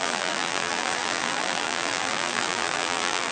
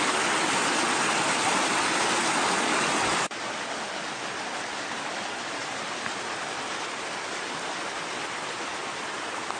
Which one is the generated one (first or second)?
first